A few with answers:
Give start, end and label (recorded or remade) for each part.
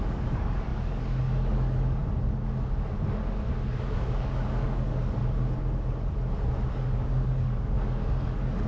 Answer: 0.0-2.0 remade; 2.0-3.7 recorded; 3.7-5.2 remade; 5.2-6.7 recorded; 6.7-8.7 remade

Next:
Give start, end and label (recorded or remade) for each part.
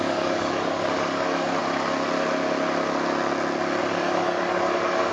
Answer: 0.0-1.6 remade; 1.6-3.8 recorded; 3.8-5.1 remade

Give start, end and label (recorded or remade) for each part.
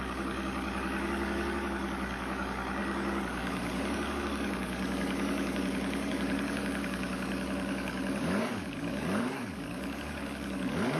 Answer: 0.0-11.0 remade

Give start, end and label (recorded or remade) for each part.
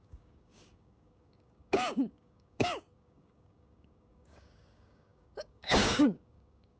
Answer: 0.0-6.8 remade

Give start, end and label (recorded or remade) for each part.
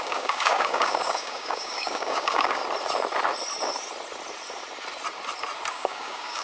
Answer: 0.0-2.6 remade; 2.6-5.7 recorded; 5.7-6.4 remade